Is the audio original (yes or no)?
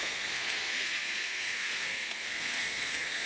no